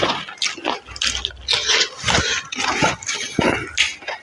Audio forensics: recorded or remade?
recorded